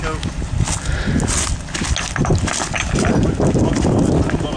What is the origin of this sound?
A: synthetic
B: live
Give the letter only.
B